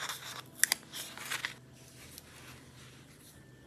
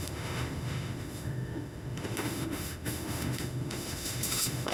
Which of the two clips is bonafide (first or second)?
first